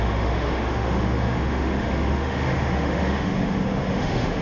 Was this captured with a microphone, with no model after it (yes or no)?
no